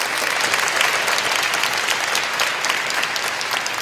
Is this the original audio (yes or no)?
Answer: yes